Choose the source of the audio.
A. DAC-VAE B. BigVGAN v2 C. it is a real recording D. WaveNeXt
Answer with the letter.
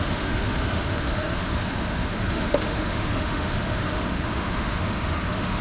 A